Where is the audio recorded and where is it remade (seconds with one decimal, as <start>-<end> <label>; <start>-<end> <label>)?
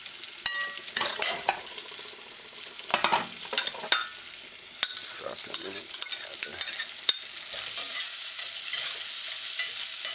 0.0-0.8 recorded; 0.8-1.7 remade; 1.7-7.9 recorded; 7.9-8.5 remade; 8.5-10.1 recorded